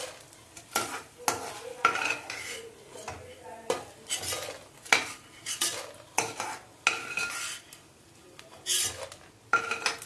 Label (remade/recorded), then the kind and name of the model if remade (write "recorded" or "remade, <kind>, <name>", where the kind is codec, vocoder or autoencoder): recorded